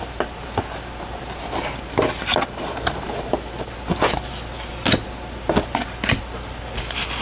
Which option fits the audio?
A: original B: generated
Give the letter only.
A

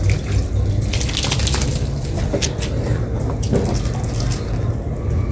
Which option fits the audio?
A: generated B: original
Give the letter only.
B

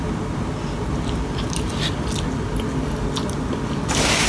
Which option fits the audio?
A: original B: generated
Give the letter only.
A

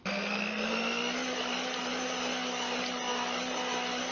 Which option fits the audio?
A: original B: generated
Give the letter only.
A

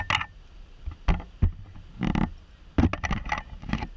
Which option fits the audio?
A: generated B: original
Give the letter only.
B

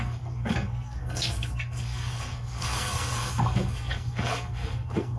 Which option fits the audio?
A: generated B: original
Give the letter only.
A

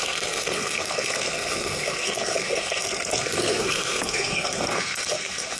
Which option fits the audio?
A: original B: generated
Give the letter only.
B